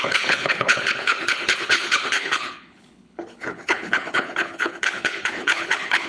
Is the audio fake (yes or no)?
yes